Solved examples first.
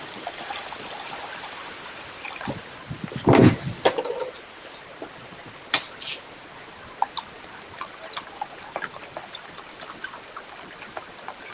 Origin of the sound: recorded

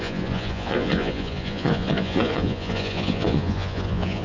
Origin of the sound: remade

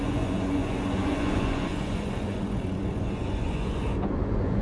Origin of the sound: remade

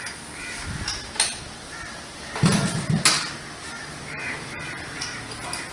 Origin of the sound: recorded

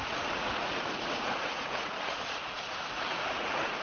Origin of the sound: remade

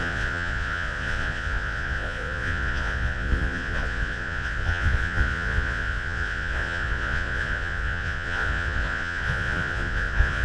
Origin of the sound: remade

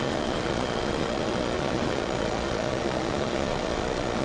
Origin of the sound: remade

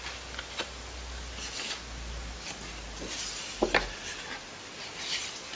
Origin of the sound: recorded